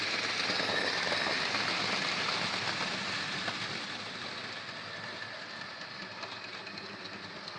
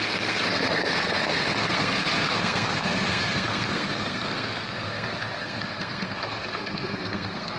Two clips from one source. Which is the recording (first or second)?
first